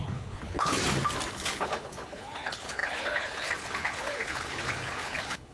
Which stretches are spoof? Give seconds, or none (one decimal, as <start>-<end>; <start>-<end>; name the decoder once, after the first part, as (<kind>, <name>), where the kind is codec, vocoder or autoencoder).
0.0-0.8 (codec, HILCodec); 1.3-5.5